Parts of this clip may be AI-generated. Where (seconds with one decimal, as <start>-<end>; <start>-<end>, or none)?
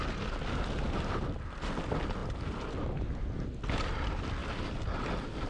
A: none